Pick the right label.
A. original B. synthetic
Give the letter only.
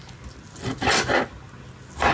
A